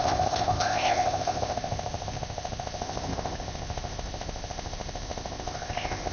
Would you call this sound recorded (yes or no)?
no